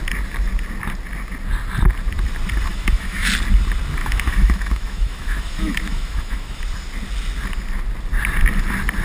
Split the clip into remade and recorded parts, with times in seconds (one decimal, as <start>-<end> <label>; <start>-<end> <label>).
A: 0.0-2.7 recorded; 2.7-3.3 remade; 3.3-4.0 recorded; 4.0-6.6 remade; 6.6-9.0 recorded